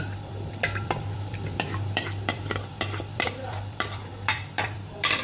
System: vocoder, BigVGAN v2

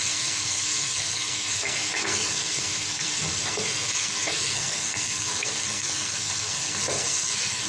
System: codec, SNAC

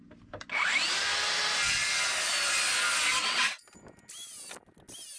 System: none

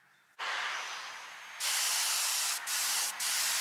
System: none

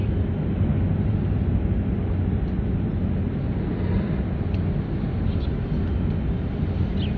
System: none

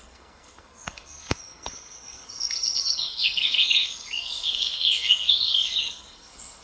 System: codec, SNAC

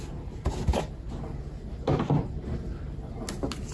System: none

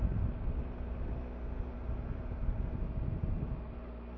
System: none